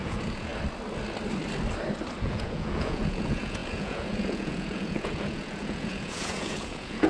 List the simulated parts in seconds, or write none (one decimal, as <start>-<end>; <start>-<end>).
0.0-0.5; 2.2-7.1